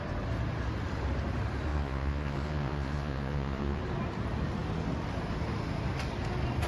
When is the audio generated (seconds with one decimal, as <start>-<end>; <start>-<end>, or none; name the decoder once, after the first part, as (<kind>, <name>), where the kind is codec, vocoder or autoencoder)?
1.7-3.8 (vocoder, Vocos)